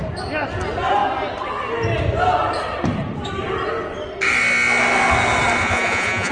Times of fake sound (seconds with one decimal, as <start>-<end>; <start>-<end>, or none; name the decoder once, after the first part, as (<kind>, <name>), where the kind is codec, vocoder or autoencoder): 5.6-6.3 (vocoder, Vocos)